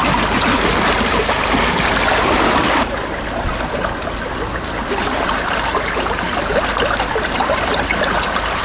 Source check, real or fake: real